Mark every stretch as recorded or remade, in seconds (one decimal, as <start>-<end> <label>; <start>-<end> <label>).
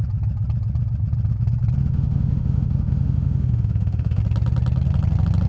0.0-1.8 recorded; 1.8-4.2 remade; 4.2-5.5 recorded